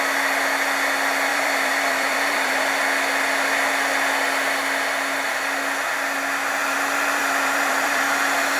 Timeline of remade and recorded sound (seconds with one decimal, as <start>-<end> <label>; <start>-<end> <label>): 0.0-1.3 recorded; 1.3-2.8 remade; 2.8-6.6 recorded; 6.6-8.0 remade; 8.0-8.6 recorded